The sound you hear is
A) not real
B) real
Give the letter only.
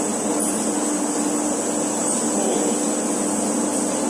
B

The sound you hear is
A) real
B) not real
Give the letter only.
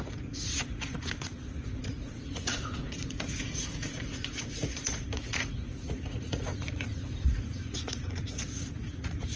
B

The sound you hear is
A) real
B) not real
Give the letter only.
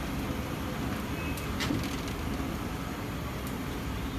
A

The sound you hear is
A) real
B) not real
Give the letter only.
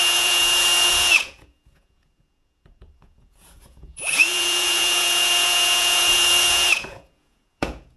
B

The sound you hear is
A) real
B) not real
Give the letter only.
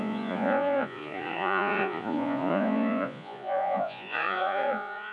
B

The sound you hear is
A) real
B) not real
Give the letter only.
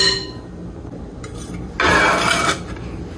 A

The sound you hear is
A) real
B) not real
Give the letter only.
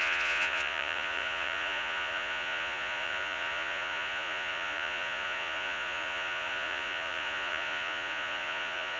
B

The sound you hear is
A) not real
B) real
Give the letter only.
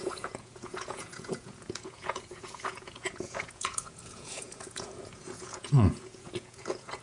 A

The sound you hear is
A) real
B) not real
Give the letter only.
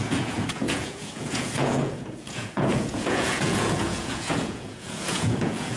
B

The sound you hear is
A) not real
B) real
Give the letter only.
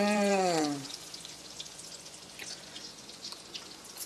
A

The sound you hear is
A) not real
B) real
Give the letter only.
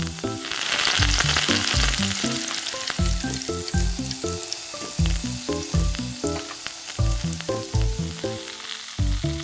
B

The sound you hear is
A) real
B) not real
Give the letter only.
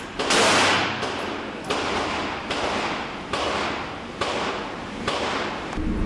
A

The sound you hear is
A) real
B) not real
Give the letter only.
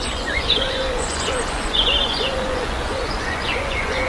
B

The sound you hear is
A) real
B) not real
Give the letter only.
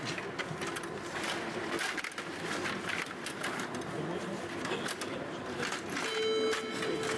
A